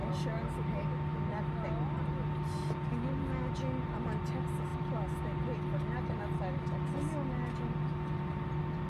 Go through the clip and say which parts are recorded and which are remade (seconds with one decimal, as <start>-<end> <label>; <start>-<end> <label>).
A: 0.0-8.9 recorded

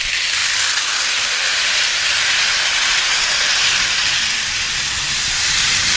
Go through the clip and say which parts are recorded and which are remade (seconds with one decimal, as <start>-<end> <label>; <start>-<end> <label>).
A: 0.0-6.0 recorded